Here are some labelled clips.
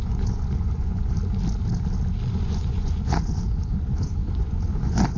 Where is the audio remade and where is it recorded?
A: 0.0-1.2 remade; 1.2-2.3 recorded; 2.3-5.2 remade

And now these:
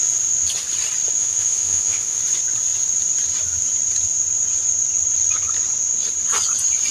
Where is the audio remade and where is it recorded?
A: 0.0-1.2 recorded; 1.2-2.2 remade; 2.2-6.9 recorded